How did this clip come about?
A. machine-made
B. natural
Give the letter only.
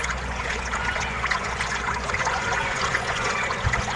A